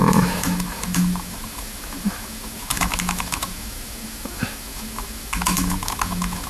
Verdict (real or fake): fake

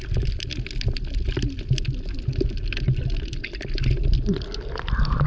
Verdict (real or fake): real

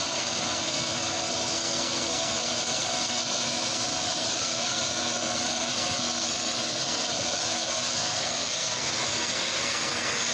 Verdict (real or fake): fake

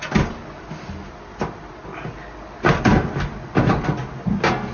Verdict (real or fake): real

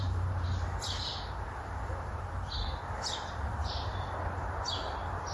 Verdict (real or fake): fake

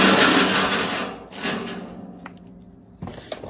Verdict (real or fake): real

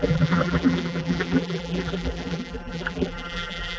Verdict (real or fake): fake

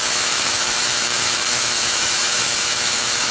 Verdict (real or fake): fake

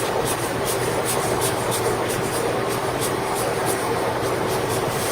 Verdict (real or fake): fake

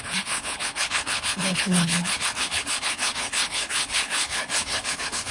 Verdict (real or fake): fake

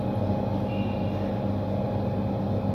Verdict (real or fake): real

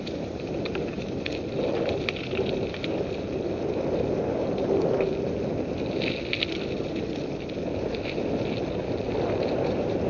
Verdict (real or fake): real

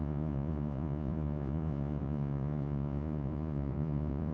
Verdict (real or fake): fake